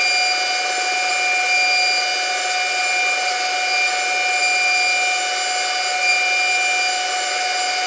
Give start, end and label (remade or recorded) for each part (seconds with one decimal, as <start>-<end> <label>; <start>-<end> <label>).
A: 0.0-7.9 recorded